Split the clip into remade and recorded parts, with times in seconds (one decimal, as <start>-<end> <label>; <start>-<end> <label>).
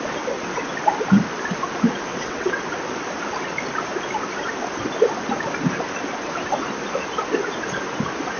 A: 0.0-2.1 recorded; 2.1-2.6 remade; 2.6-8.4 recorded